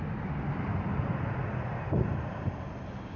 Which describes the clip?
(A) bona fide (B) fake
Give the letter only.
A